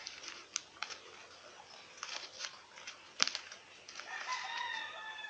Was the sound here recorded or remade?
recorded